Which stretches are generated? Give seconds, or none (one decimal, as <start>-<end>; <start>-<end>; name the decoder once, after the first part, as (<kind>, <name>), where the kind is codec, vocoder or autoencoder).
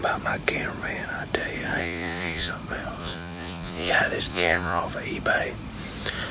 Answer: 1.8-2.5 (vocoder, Vocos); 3.0-3.9; 4.3-4.8